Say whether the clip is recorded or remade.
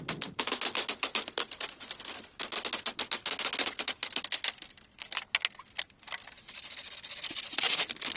recorded